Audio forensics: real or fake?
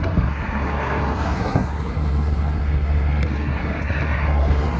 fake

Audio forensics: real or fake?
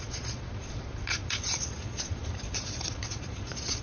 fake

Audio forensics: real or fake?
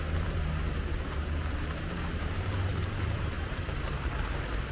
fake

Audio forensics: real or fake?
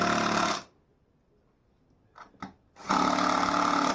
real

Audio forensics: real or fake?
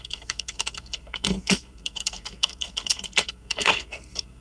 fake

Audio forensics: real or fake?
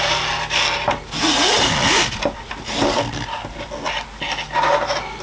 real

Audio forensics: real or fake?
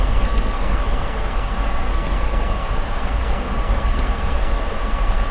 fake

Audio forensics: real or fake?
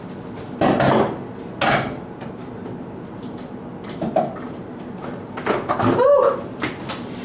real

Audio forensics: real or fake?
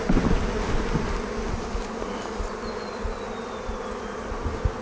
real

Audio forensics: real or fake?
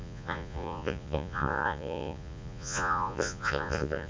fake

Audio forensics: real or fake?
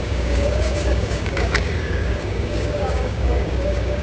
fake